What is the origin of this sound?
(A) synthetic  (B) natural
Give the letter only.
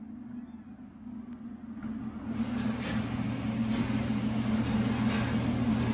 B